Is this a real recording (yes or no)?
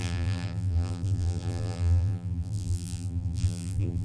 no